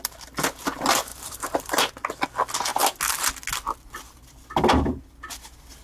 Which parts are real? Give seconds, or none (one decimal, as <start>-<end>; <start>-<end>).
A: 0.0-1.1; 1.9-5.8